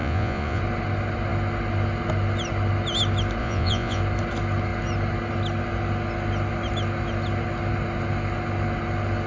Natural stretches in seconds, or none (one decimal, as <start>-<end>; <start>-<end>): 0.6-3.4; 4.0-9.3